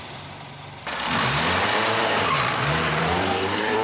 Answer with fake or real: fake